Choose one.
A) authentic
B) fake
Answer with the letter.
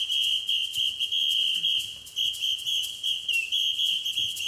A